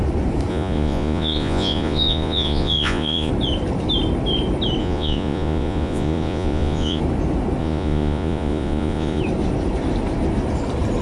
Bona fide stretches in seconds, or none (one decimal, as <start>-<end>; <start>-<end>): 0.0-0.5; 3.3-4.8; 7.0-7.6; 9.2-11.0